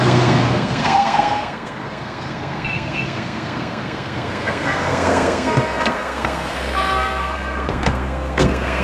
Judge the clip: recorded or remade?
remade